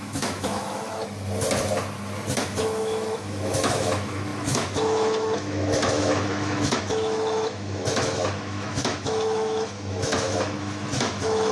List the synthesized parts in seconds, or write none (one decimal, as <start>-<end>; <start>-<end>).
0.0-1.0; 2.4-11.5